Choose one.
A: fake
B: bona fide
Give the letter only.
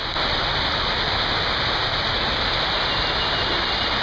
B